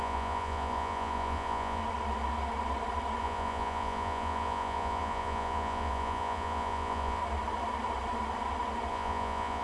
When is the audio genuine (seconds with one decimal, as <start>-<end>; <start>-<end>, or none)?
1.8-3.2; 7.2-8.9